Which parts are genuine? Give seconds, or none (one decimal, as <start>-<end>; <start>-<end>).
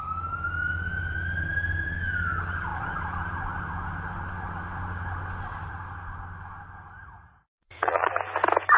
0.0-7.0; 8.1-8.8